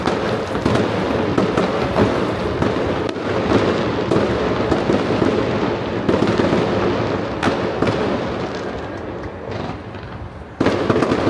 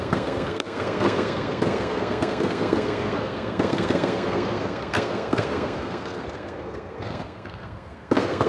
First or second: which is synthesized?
second